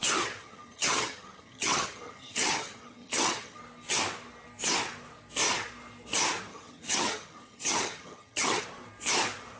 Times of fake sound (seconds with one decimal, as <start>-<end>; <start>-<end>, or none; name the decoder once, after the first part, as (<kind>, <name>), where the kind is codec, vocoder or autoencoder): 0.4-3.6 (vocoder, HiFi-GAN); 6.5-8.6